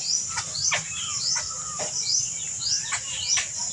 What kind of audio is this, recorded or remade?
recorded